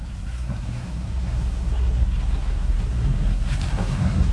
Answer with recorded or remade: remade